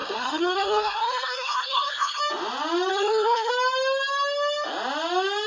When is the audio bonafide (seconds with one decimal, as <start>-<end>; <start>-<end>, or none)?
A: 2.2-2.9; 3.5-5.5